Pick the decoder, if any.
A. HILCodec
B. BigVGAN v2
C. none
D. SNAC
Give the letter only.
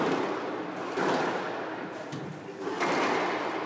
C